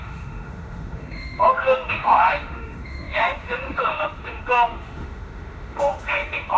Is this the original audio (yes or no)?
no